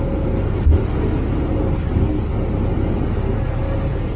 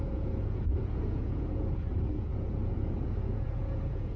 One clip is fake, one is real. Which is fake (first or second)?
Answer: second